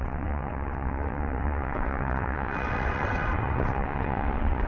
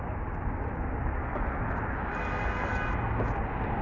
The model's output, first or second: first